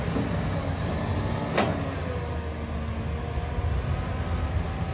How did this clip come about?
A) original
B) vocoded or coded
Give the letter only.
A